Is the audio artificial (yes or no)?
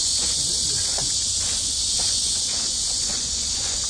yes